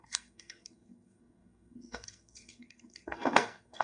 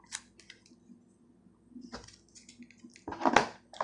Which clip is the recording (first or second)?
second